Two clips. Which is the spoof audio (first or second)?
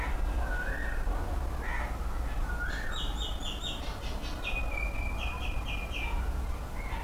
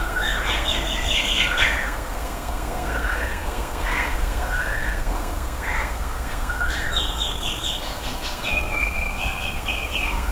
second